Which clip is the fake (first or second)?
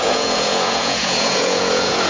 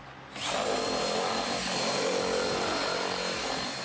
first